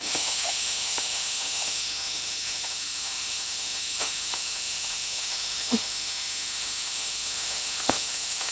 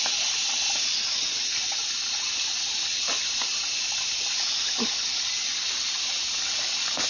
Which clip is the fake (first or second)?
first